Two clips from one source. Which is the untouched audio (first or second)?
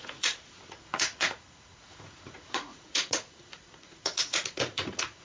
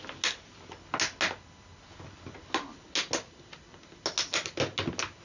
second